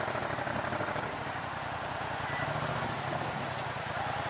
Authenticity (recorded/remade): recorded